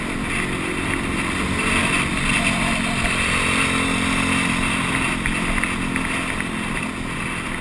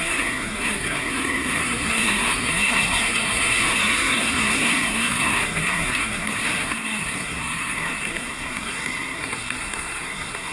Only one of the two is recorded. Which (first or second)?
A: first